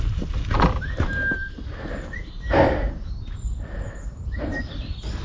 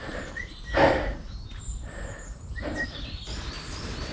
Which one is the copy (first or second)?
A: second